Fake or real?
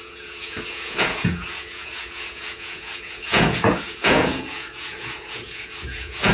fake